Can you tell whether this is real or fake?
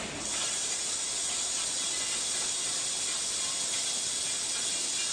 real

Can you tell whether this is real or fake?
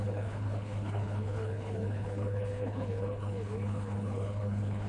fake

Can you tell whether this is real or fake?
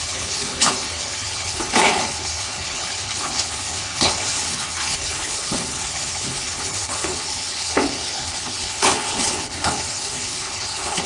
fake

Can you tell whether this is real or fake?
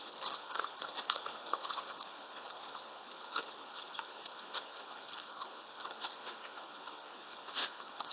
fake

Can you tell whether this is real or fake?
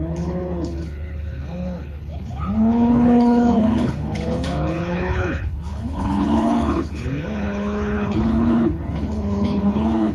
fake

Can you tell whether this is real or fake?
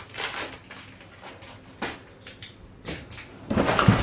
real